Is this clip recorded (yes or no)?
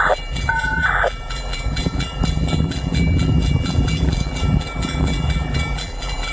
no